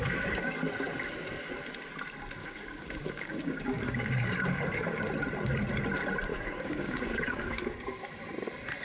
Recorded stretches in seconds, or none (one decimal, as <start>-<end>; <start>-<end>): 0.6-2.4; 5.0-6.3; 8.0-8.8